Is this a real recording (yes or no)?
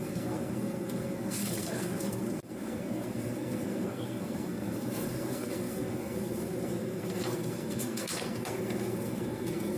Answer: no